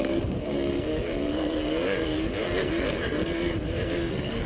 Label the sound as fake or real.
fake